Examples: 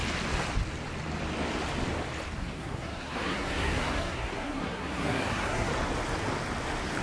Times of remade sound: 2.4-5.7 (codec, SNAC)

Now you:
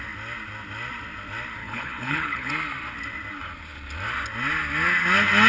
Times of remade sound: 1.6-2.5 (codec, HILCodec)

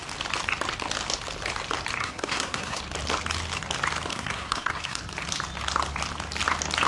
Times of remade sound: 2.0-2.8 (codec, SNAC); 4.1-5.0

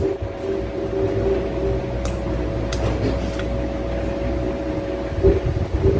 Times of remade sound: none